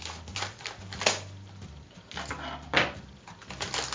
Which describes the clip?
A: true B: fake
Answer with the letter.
A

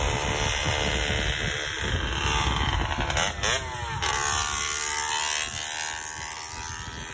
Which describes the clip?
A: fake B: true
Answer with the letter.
B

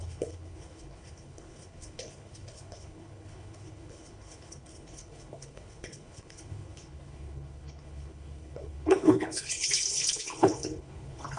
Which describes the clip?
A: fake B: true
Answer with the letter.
A